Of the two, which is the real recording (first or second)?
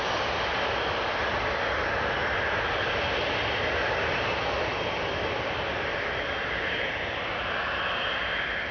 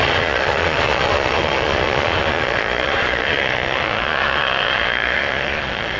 first